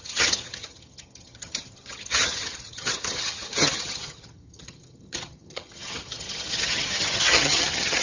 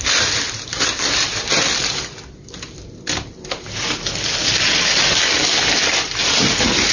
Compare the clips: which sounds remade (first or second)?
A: first